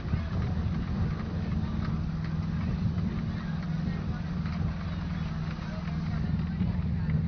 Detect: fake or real real